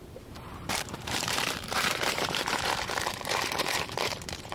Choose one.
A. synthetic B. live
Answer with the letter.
A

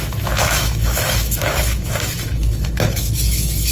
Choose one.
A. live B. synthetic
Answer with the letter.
B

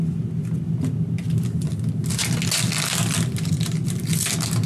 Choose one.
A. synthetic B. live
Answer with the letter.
B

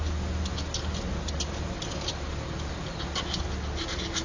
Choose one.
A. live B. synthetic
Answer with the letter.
A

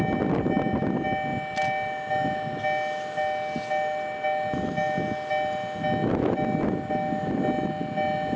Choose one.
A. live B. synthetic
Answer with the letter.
A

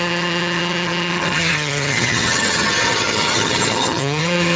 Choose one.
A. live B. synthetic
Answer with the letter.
B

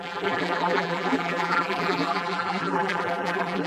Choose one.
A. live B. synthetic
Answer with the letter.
B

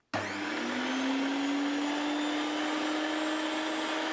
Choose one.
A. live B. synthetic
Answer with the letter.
A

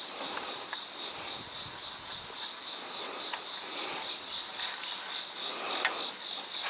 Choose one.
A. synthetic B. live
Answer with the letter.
B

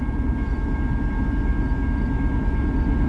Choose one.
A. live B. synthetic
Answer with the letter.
A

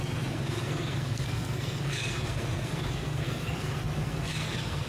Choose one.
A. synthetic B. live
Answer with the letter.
A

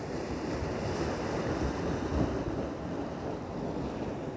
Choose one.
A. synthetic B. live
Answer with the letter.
B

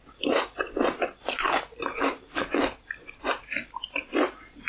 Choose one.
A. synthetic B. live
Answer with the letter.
A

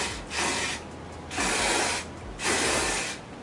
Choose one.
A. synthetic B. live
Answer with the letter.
B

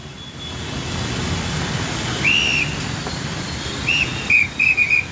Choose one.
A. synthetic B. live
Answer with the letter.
B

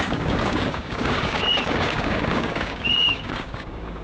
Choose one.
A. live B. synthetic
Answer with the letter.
B